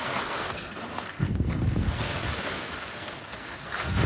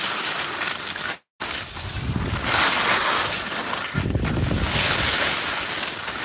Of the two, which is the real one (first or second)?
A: second